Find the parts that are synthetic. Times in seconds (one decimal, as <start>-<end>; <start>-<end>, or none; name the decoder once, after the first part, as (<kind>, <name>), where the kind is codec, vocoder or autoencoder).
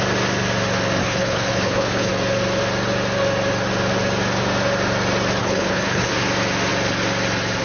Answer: 1.0-2.1 (codec, HILCodec); 5.4-6.1